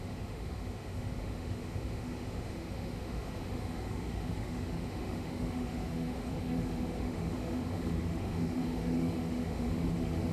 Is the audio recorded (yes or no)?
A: no